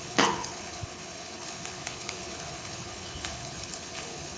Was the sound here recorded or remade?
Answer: remade